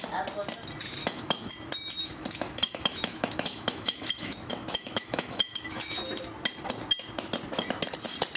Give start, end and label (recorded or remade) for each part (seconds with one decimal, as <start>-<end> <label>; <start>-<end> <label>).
0.0-1.0 recorded; 1.0-1.5 remade; 1.5-2.0 recorded; 2.0-6.1 remade; 6.1-8.4 recorded